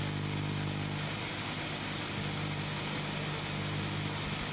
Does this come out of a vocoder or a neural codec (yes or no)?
no